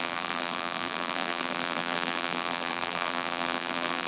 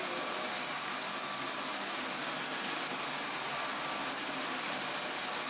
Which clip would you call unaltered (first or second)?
second